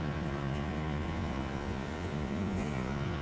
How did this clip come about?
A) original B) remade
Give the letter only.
B